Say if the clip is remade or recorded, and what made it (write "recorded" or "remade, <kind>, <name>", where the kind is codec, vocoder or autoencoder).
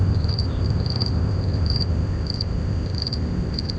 remade, codec, ZipCodec